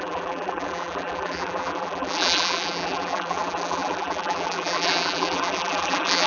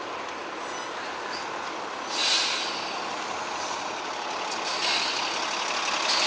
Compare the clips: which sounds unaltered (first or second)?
second